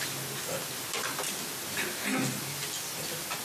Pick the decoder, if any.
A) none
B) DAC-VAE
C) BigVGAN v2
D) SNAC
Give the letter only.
A